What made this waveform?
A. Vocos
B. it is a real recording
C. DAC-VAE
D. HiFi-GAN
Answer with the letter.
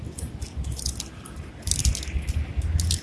B